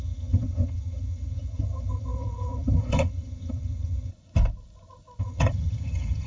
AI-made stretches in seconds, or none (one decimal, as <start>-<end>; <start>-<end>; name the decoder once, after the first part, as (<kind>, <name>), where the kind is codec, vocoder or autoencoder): 0.0-4.1 (vocoder, HiFi-GAN); 5.2-6.3